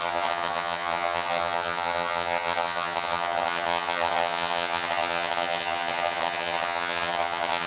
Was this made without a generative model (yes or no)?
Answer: no